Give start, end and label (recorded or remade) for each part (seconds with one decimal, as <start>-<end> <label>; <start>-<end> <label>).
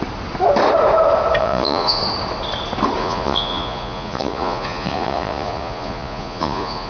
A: 0.0-1.4 recorded; 1.4-2.0 remade; 2.0-3.0 recorded; 3.0-6.9 remade